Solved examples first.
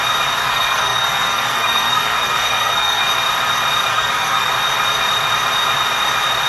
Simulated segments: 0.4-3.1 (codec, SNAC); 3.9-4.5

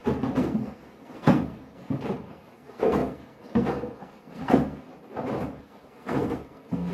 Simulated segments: 0.0-4.9 (codec, SNAC); 5.6-6.9

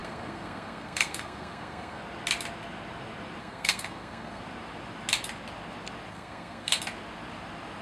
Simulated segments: 0.0-2.0 (codec, SNAC); 3.4-4.4; 6.1-6.8

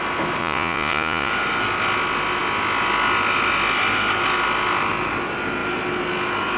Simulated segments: 0.4-1.3 (vocoder, Vocos)

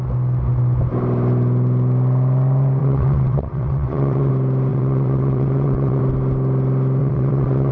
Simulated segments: 2.8-4.3 (vocoder, WaveNeXt); 4.7-6.0; 7.0-7.7

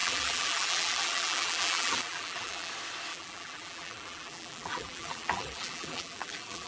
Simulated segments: 0.0-2.7 (vocoder, BigVGAN v2); 3.1-6.7

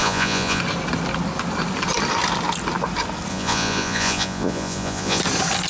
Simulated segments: 0.0-0.6 (vocoder, Vocos); 3.3-5.2

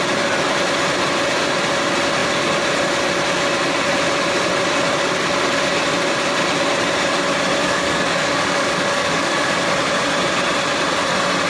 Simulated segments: 7.6-9.7 (codec, DAC)